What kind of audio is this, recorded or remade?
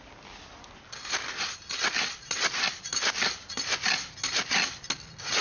recorded